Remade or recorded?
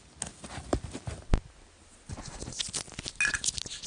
recorded